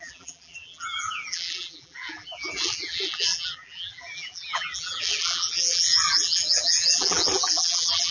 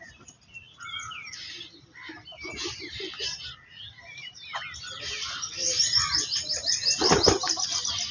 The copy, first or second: first